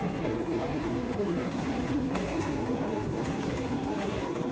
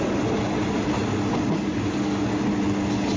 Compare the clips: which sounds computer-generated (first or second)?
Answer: first